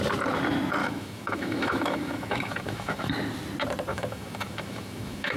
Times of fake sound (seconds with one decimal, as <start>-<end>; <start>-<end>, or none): 0.8-3.1; 3.9-5.4